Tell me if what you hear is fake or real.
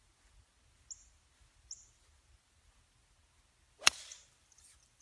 real